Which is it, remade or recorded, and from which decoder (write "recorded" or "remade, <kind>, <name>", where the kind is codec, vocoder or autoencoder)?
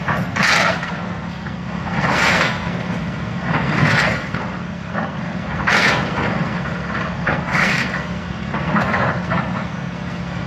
remade, codec, SNAC